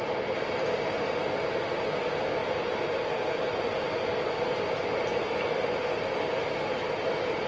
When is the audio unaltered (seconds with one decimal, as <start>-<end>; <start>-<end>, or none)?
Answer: 0.0-7.5